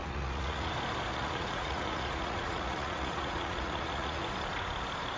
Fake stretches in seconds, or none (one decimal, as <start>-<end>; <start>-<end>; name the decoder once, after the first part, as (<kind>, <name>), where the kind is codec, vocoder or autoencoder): 0.0-0.7 (vocoder, Vocos); 1.1-4.2